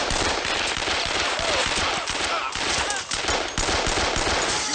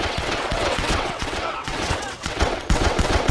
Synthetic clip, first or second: second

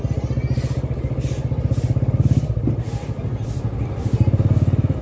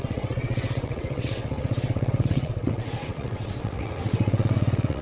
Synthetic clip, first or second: second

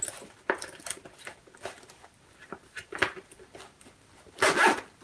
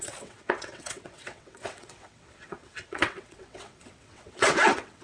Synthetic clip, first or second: second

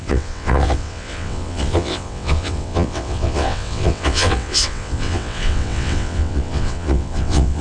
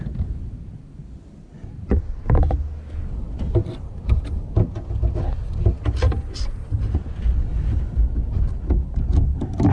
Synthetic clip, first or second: first